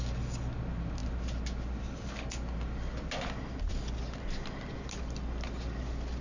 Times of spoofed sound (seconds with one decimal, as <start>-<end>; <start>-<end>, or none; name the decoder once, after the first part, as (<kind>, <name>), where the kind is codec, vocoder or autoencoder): none